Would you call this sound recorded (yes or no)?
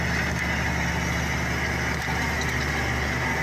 yes